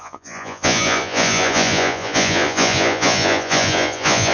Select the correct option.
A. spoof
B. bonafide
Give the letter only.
A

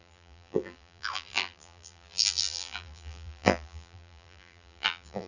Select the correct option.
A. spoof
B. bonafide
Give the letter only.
A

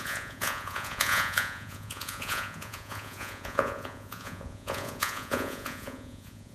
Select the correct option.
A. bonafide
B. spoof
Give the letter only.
B